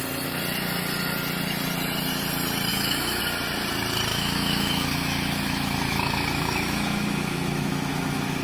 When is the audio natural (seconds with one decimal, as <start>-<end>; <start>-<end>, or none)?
0.0-2.7; 3.2-4.1